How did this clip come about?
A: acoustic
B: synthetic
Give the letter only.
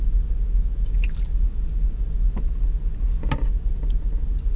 A